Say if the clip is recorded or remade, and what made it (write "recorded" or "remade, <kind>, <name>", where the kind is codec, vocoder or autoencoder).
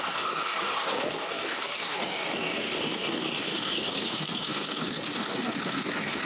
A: remade, codec, DAC